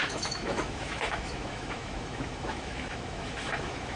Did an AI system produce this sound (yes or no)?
yes